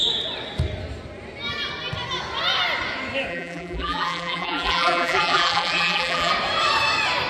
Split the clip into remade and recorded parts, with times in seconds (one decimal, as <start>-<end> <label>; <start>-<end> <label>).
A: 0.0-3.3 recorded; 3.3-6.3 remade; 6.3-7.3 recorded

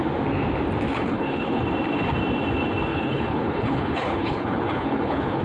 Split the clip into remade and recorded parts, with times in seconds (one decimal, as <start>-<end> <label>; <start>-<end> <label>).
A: 0.0-0.9 recorded; 0.9-1.6 remade; 1.6-2.9 recorded; 2.9-5.4 remade

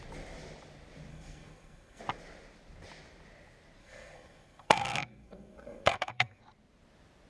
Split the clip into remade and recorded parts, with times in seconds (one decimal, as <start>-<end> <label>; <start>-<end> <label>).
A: 0.0-1.1 recorded; 1.1-2.0 remade; 2.0-3.8 recorded; 3.8-6.4 remade; 6.4-7.3 recorded